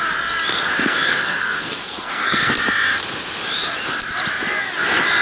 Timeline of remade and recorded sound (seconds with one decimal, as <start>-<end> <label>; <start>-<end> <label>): 0.0-0.5 recorded; 0.5-2.5 remade; 2.5-5.2 recorded